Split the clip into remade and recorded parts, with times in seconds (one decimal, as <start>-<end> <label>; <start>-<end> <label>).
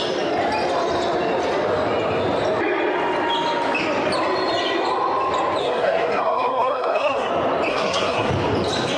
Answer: 0.0-5.6 recorded; 5.6-7.3 remade; 7.3-7.7 recorded; 7.7-8.3 remade; 8.3-9.0 recorded